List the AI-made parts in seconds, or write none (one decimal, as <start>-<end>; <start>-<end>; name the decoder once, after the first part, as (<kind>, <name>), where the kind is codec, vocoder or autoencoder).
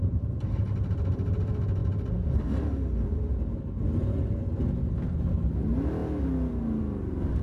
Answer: none